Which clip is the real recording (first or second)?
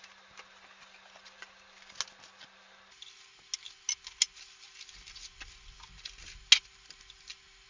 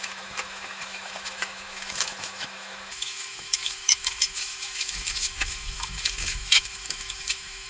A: first